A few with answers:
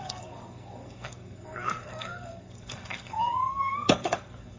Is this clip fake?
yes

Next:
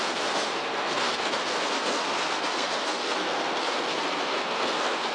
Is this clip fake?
yes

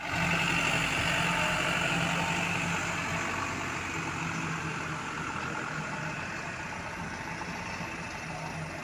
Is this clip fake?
no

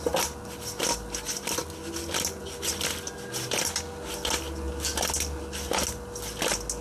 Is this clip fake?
no